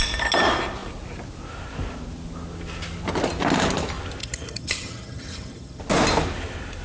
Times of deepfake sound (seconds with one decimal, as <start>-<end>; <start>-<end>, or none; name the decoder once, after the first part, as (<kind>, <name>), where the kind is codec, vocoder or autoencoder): 4.2-5.8 (vocoder, HiFi-GAN)